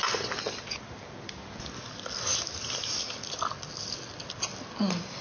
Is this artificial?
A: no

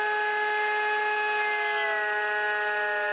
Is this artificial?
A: no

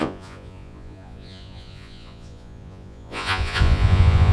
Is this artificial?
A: yes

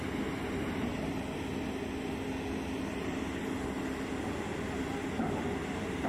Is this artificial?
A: no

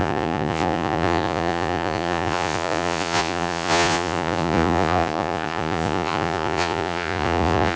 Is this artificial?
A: yes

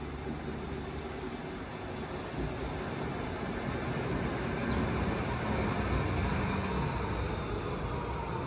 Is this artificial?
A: no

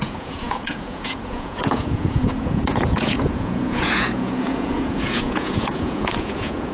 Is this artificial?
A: yes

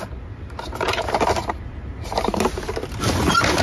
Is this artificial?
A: no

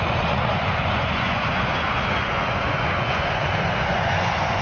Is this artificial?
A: yes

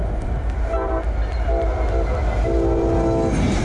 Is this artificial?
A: no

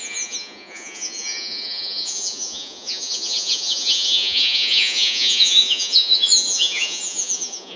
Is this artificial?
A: yes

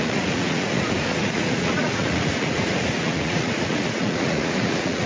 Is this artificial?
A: yes